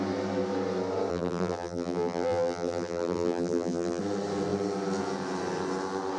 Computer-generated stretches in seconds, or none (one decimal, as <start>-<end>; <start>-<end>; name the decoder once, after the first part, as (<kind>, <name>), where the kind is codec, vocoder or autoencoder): 1.1-4.0 (vocoder, BigVGAN v2)